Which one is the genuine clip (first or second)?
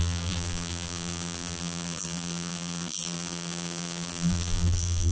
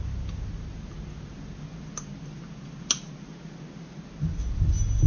second